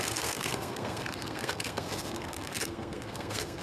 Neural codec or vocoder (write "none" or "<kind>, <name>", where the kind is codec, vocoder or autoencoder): codec, SNAC